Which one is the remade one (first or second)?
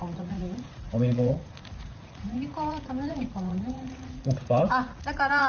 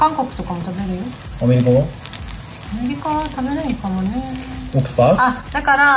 first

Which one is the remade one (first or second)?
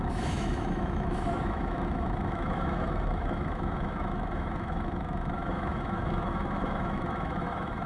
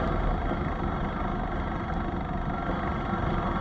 first